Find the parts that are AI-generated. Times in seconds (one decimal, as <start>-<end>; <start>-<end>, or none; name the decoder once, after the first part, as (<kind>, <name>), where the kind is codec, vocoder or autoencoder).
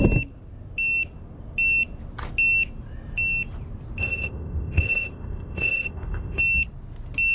4.0-6.4 (codec, ZipCodec)